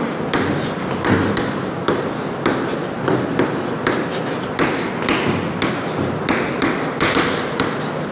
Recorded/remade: recorded